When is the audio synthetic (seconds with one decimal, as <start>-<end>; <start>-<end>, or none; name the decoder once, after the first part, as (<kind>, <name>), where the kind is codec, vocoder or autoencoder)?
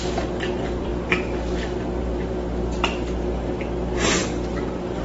0.0-0.9 (vocoder, BigVGAN v2); 2.0-5.0